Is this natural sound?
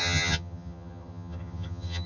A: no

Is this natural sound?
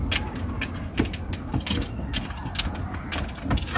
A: yes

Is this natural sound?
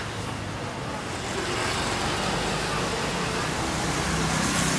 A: yes